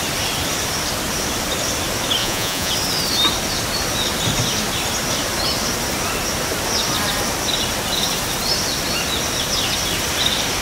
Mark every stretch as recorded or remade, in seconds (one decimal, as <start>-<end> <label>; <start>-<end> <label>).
0.0-2.2 recorded; 2.2-2.7 remade; 2.7-10.6 recorded